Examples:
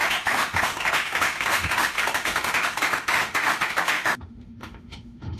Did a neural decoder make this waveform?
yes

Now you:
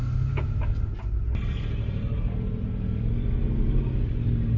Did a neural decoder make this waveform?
no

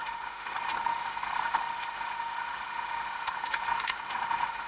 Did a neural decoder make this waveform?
yes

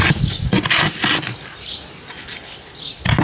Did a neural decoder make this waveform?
no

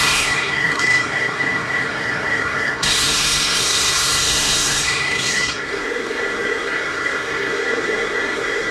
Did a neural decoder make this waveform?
yes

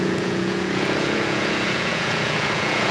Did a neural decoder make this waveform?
yes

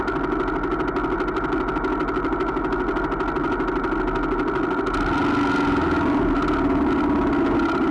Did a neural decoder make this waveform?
no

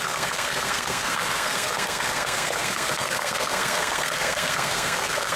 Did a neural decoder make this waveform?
yes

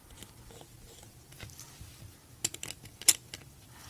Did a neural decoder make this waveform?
no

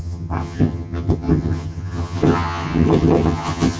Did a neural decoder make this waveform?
yes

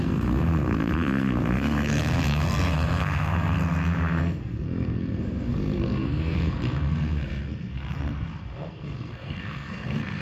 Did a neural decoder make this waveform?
yes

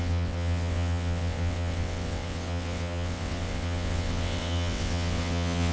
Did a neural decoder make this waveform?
yes